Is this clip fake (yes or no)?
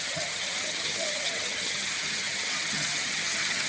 yes